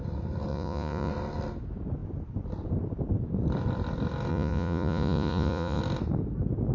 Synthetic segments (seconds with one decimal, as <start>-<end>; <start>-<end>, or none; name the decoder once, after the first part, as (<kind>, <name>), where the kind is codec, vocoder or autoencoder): 0.5-1.1 (vocoder, Vocos); 4.3-5.8